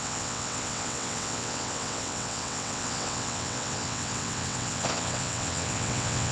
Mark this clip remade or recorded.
remade